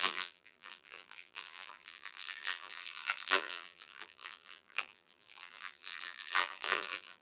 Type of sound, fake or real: fake